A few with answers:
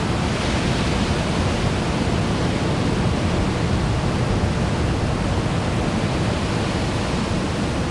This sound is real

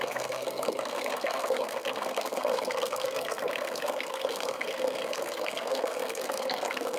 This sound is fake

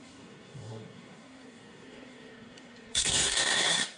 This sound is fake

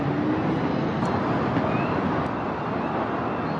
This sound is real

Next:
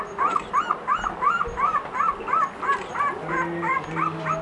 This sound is real